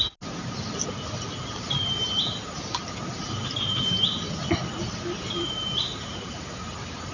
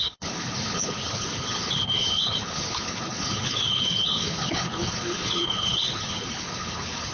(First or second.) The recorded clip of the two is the first